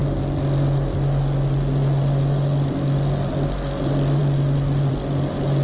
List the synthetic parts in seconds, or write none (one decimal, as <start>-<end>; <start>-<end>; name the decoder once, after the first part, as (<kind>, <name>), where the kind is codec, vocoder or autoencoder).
none